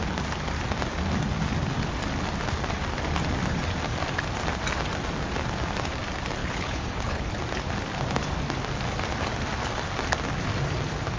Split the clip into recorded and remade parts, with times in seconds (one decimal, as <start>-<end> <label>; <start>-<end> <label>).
0.0-6.4 recorded; 6.4-7.3 remade; 7.3-11.2 recorded